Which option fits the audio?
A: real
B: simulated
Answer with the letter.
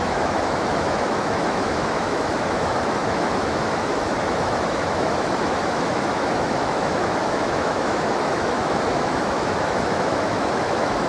B